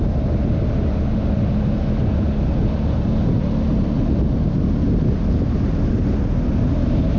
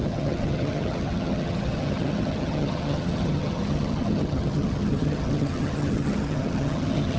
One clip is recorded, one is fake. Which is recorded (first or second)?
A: first